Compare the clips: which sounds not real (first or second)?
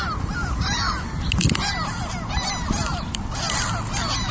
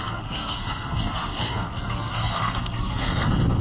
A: second